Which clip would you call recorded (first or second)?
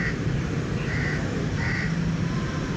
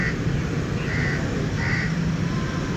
second